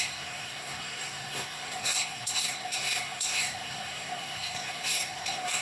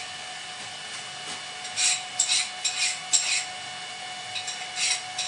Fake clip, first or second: first